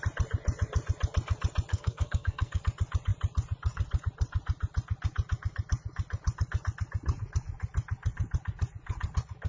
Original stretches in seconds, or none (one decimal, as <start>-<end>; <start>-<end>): 0.0-1.7; 2.6-9.5